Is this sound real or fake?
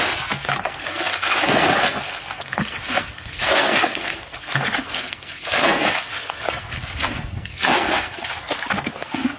fake